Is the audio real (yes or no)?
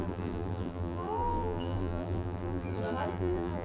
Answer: no